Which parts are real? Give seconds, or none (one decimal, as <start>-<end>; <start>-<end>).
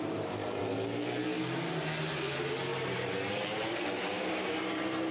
0.6-2.0